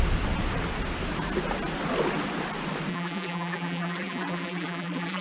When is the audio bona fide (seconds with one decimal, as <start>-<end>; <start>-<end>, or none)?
0.0-2.9